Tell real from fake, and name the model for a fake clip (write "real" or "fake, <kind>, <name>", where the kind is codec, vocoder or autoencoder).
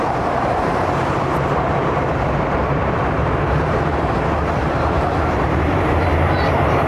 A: fake, vocoder, BigVGAN v2